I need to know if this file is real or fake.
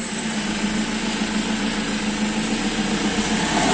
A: real